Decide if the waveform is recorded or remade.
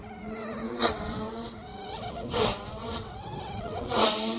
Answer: remade